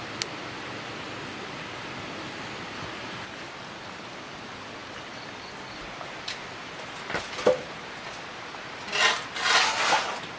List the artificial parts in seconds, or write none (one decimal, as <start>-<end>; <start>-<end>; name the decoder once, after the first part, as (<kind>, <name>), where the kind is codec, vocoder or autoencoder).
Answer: none